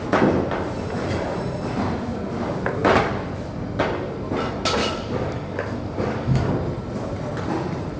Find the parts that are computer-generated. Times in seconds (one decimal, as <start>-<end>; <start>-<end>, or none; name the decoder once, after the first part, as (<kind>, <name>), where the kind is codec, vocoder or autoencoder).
4.8-6.5 (codec, DAC)